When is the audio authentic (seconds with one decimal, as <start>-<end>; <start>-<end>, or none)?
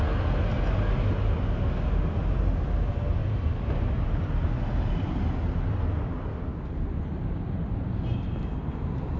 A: 0.0-3.2; 4.9-9.2